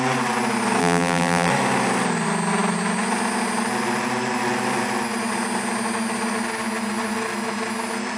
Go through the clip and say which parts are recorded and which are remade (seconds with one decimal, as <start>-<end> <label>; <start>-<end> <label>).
0.0-0.8 recorded; 0.8-1.5 remade; 1.5-8.2 recorded